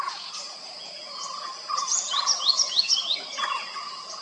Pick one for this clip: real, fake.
fake